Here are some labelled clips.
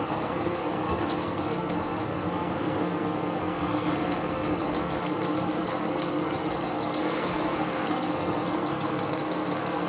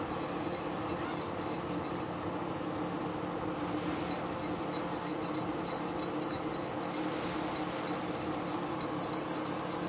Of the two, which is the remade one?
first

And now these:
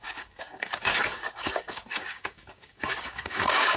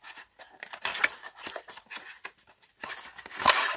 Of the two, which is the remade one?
first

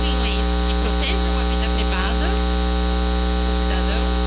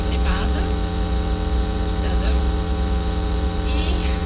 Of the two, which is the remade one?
second